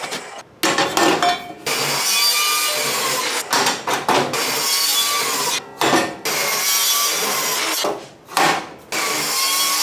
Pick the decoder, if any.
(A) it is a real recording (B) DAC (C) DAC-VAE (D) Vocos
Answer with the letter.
A